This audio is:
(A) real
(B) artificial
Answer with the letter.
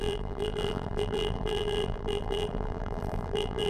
B